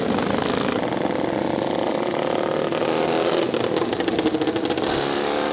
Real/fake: real